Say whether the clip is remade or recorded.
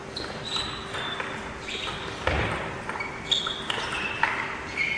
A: recorded